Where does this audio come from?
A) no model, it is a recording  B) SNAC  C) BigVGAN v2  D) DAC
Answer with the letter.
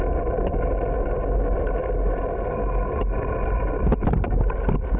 A